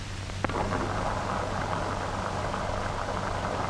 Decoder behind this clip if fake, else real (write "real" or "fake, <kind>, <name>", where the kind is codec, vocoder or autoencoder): real